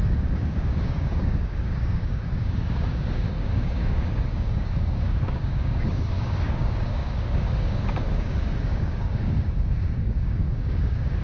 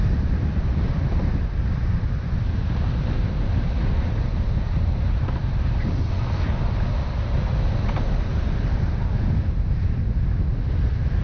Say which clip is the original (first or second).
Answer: second